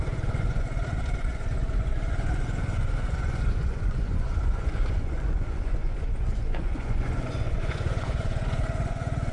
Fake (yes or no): yes